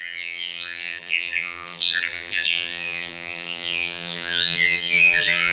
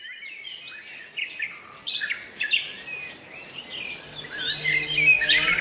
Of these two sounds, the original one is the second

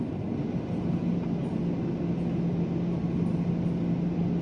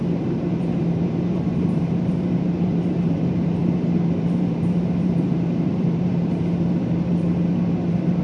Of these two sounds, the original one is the first